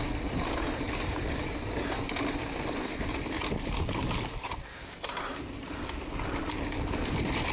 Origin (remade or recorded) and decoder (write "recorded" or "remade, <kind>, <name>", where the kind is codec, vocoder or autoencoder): recorded